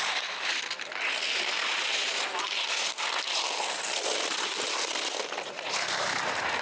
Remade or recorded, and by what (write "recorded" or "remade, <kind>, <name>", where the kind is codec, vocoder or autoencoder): recorded